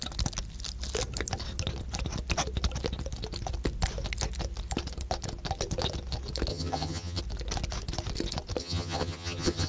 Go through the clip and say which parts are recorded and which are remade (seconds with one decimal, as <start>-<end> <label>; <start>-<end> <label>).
0.0-6.5 recorded; 6.5-7.2 remade; 7.2-8.6 recorded; 8.6-9.7 remade